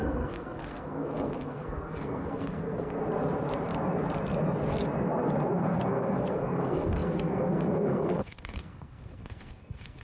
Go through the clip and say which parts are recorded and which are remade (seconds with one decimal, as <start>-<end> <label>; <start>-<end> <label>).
0.0-3.0 remade; 3.0-5.5 recorded; 5.5-10.0 remade